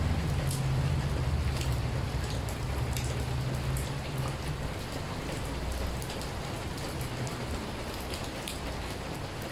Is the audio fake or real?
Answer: real